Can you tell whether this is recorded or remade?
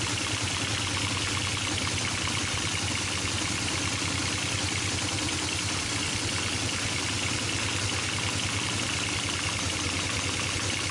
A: recorded